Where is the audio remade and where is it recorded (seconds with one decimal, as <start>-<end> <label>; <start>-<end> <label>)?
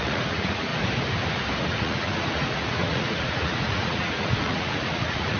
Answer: 0.0-0.7 remade; 0.7-1.6 recorded; 1.6-5.4 remade